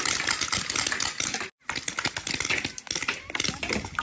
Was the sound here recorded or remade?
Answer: recorded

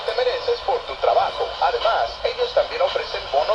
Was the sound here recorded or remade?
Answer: recorded